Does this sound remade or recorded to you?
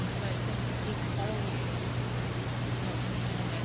recorded